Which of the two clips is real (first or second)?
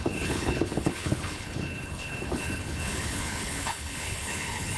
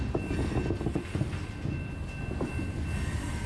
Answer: second